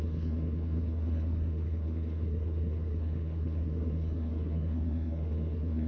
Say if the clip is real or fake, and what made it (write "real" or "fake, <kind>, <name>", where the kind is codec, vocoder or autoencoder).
fake, codec, SNAC